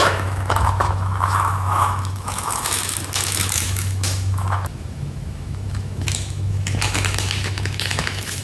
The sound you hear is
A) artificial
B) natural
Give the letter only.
A